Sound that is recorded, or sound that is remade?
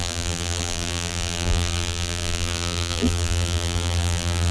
remade